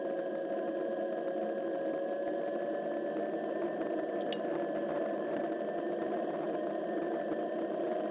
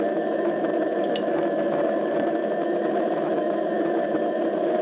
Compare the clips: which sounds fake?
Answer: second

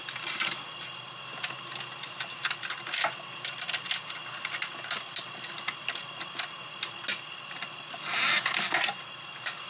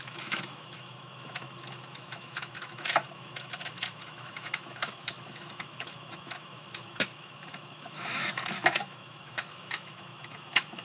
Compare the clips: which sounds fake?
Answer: second